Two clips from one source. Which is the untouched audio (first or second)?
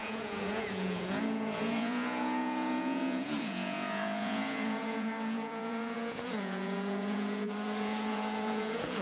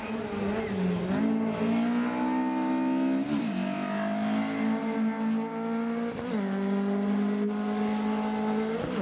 second